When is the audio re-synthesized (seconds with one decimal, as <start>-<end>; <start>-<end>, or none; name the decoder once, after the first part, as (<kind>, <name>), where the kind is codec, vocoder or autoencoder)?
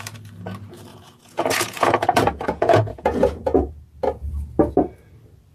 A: 0.9-3.7 (vocoder, Vocos)